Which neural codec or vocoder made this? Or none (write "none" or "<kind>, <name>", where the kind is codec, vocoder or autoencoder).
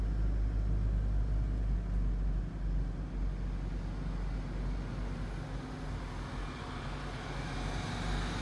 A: none